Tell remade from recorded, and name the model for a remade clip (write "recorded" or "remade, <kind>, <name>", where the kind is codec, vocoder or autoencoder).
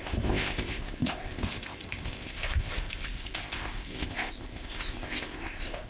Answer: remade, codec, ZipCodec